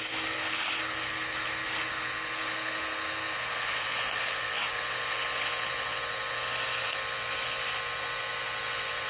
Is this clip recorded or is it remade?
recorded